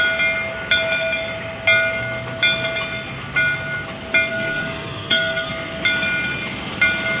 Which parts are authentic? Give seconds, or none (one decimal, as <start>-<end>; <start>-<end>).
0.0-4.3; 5.5-7.2